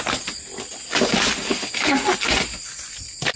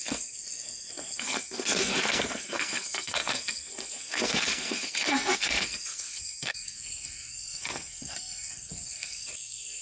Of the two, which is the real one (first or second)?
first